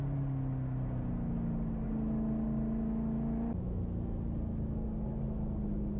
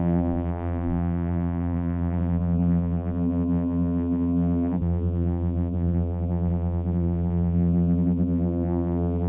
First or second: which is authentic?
first